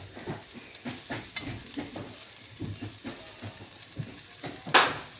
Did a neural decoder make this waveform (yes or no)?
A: no